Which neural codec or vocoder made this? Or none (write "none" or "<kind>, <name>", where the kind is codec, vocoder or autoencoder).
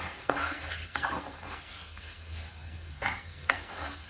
codec, SNAC